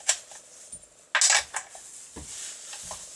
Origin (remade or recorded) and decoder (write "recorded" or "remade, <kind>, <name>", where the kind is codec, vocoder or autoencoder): recorded